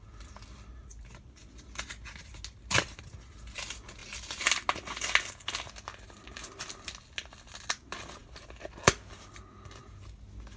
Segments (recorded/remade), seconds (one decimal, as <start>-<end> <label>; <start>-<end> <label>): 0.0-10.6 recorded